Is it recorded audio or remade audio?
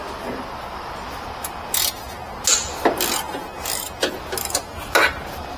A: recorded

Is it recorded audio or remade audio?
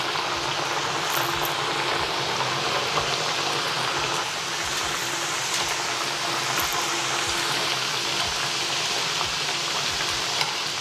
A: recorded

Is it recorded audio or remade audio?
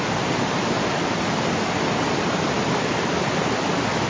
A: recorded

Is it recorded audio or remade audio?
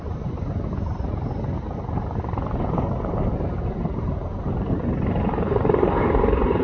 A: remade